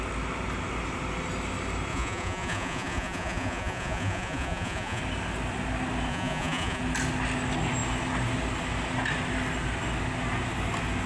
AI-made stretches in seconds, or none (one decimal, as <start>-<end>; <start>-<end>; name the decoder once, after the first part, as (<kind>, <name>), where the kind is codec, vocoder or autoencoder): 1.9-5.0 (vocoder, Vocos); 6.1-6.8